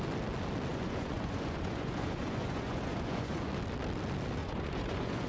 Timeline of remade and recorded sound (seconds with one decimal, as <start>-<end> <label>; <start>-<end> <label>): 0.0-0.7 recorded; 0.7-3.5 remade; 3.5-4.4 recorded; 4.4-5.3 remade